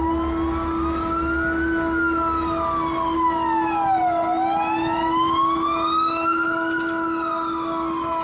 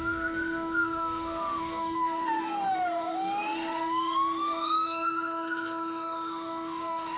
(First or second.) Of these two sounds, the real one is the first